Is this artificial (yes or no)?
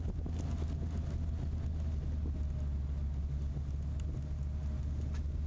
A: no